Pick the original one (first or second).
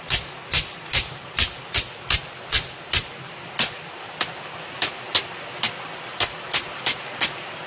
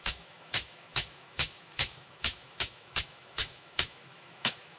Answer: first